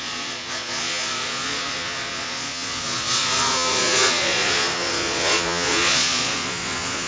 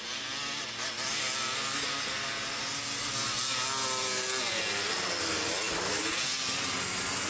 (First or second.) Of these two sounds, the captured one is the second